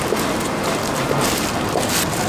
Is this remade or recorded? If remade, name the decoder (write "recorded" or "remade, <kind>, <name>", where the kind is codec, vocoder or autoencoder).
recorded